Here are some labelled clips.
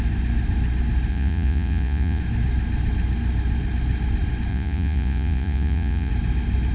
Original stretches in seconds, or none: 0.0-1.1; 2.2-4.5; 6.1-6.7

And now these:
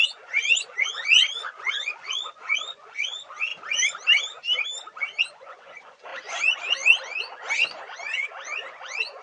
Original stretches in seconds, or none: 3.5-5.2

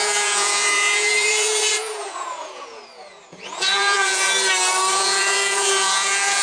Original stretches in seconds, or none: 4.3-4.9

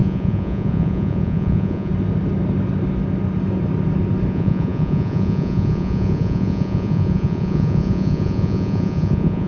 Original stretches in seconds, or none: 1.9-4.3

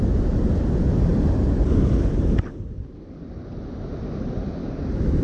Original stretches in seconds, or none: 0.0-5.2

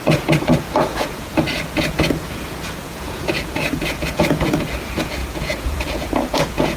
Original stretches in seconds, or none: none